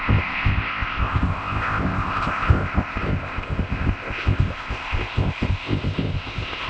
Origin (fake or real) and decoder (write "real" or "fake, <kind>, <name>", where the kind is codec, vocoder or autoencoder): fake, codec, ZipCodec